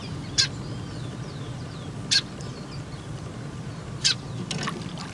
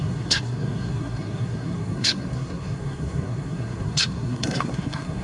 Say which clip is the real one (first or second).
first